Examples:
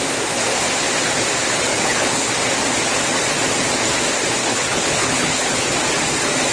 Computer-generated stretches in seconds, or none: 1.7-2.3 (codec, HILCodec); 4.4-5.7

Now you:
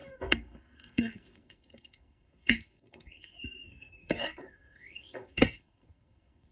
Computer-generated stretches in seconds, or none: 0.0-6.5 (codec, SNAC)